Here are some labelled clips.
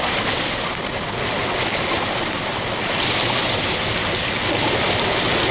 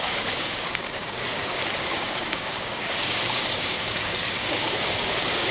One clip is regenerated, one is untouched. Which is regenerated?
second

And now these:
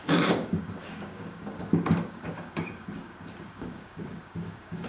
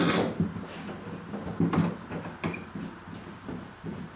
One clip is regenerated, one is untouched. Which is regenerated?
first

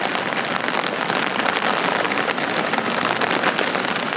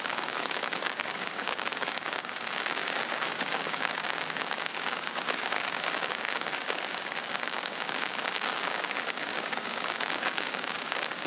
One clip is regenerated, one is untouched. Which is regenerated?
second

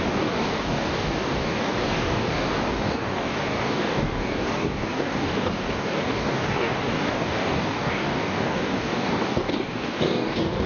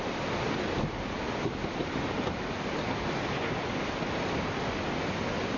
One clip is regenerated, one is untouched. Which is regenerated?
first